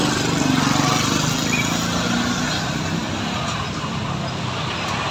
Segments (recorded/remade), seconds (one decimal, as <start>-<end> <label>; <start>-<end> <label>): 0.0-5.1 recorded